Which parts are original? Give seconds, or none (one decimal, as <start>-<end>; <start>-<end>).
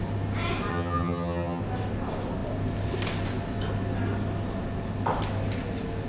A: 0.0-0.7; 1.6-6.1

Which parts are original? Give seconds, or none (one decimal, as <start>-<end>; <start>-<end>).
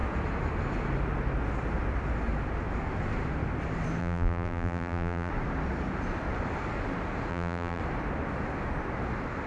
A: 0.0-4.0; 5.3-7.3; 7.8-9.5